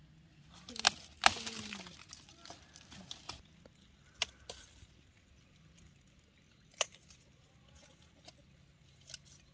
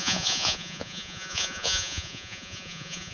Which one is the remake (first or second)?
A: second